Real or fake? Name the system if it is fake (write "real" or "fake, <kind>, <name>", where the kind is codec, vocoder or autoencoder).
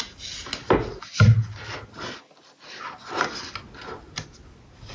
real